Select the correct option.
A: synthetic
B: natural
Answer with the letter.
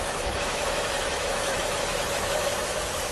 A